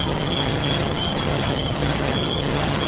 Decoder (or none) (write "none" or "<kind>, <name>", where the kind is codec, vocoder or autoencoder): vocoder, HiFi-GAN